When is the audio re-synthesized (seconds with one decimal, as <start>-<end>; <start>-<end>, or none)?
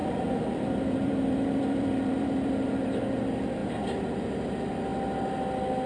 0.0-3.0; 3.6-4.2